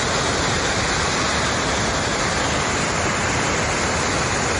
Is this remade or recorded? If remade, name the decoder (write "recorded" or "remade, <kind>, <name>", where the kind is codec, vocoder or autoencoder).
recorded